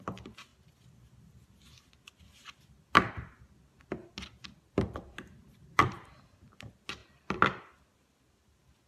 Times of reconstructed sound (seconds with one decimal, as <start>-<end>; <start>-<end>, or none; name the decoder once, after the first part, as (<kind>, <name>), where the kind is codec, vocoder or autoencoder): 5.4-6.0 (vocoder, BigVGAN v2); 7.0-7.6